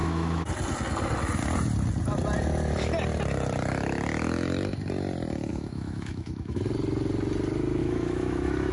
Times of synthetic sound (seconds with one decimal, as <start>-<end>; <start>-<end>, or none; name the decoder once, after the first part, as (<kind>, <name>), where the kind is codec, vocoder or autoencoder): 0.0-0.5 (autoencoder, DAC-VAE); 5.5-6.6; 7.8-8.7